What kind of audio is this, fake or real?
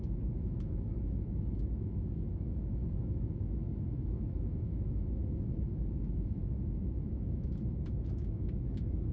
fake